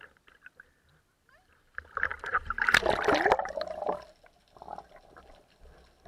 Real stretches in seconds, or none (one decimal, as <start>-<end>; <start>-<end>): 0.0-6.1